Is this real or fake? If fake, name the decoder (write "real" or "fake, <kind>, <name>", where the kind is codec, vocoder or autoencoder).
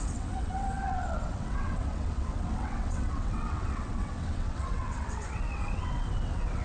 fake, vocoder, WaveNeXt